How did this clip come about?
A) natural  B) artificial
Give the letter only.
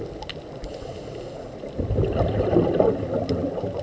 A